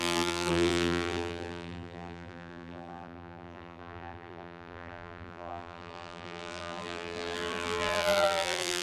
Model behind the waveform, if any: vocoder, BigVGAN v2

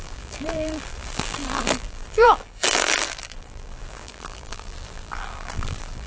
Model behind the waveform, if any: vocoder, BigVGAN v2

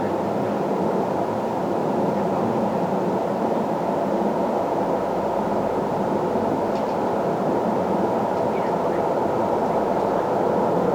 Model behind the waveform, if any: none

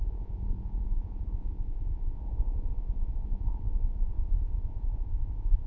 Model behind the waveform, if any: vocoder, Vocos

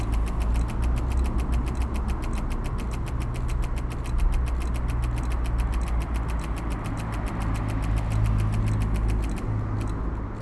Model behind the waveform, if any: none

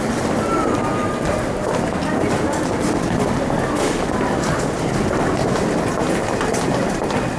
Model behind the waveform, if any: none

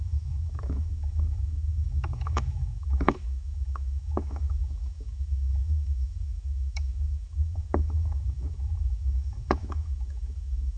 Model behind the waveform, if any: autoencoder, DAC-VAE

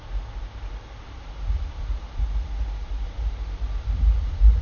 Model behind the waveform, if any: none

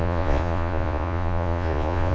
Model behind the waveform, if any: vocoder, Vocos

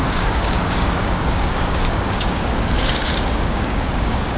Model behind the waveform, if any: codec, DAC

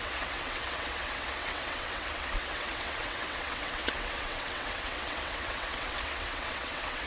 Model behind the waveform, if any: vocoder, WaveNeXt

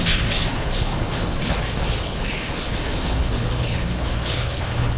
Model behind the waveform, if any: codec, HILCodec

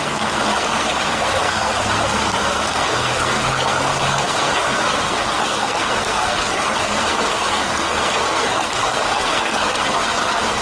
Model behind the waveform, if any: codec, SNAC